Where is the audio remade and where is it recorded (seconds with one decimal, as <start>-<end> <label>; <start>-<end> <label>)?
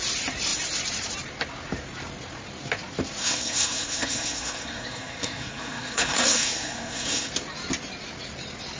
0.0-3.2 recorded; 3.2-7.3 remade; 7.3-8.8 recorded